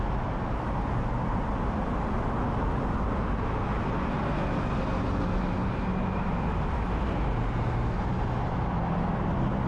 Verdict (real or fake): real